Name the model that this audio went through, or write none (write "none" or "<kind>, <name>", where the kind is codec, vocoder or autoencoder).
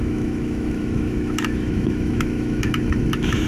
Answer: autoencoder, DAC-VAE